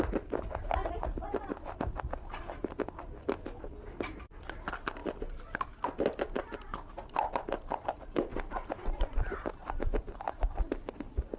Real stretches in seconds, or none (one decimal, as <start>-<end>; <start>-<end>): 0.0-11.4